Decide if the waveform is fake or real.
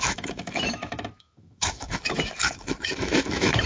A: fake